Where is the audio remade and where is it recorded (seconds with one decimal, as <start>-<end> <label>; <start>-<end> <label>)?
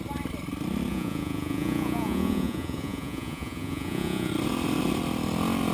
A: 0.0-0.9 recorded; 0.9-4.3 remade; 4.3-5.7 recorded